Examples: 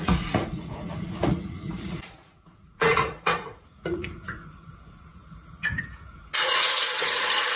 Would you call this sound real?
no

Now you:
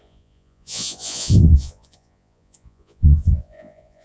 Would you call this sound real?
no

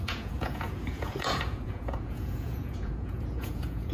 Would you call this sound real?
no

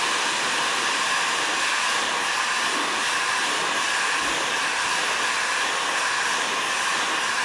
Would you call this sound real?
yes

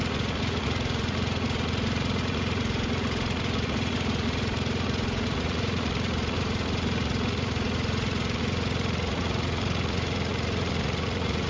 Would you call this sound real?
no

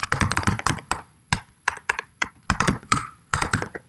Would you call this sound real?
no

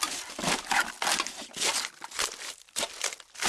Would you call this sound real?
yes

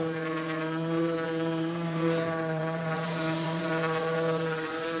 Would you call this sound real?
no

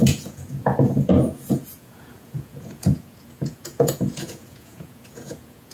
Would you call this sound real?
no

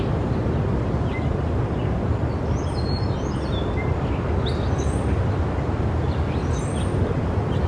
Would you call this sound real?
yes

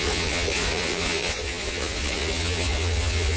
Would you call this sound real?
no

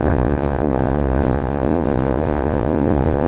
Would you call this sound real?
no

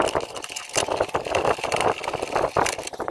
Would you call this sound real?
yes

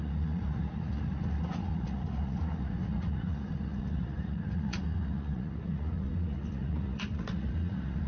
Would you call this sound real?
no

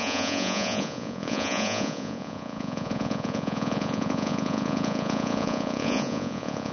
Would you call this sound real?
no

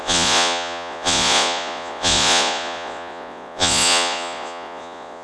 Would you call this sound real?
no